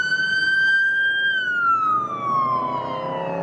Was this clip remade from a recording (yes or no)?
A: no